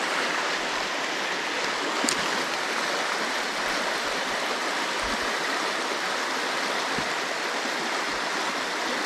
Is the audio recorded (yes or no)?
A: yes